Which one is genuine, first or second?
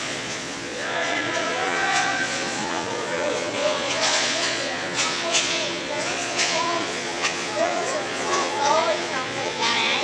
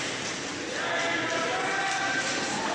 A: second